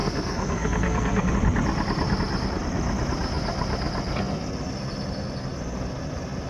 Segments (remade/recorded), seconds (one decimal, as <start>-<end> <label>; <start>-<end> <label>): 0.0-1.3 remade; 1.3-6.5 recorded